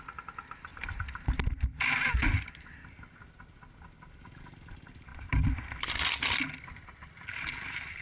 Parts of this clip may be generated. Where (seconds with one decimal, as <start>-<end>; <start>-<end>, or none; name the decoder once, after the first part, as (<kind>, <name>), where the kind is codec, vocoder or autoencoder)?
0.7-2.2 (vocoder, BigVGAN v2); 5.1-6.9

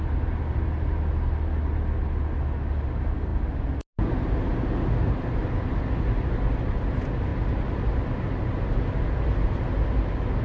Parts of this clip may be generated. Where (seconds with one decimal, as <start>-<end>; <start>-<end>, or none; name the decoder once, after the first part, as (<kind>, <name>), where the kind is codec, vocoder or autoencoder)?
none

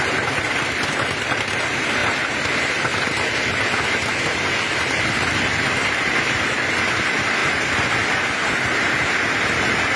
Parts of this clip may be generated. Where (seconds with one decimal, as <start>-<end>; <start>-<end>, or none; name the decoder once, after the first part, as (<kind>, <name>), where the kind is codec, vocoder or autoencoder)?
2.0-2.6 (vocoder, BigVGAN v2)

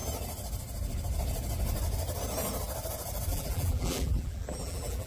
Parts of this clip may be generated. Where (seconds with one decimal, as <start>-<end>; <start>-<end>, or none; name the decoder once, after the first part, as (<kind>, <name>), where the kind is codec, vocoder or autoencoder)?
3.3-5.1 (vocoder, BigVGAN v2)

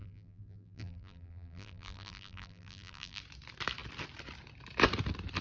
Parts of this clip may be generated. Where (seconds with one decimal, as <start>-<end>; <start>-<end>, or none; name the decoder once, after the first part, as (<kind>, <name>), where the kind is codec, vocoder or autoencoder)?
0.0-3.2 (vocoder, BigVGAN v2)

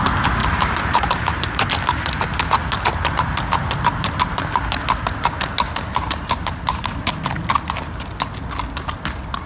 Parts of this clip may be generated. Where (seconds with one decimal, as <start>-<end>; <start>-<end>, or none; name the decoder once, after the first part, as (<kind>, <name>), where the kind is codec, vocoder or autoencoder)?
0.4-1.7 (vocoder, BigVGAN v2)

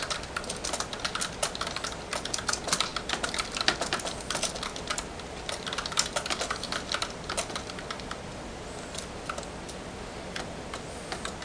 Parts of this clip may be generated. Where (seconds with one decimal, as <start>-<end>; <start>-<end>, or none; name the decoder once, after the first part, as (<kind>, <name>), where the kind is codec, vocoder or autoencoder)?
none

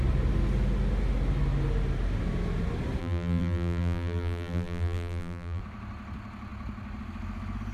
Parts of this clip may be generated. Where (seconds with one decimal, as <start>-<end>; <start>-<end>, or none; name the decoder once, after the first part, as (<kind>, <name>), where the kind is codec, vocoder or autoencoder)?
3.0-5.6 (vocoder, BigVGAN v2)